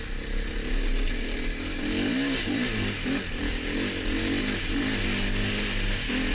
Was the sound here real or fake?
real